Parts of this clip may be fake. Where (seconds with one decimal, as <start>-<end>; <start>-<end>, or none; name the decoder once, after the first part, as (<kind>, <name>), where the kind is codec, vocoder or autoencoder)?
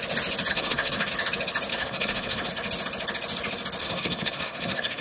0.5-1.1 (codec, SNAC); 1.7-2.5; 3.8-5.0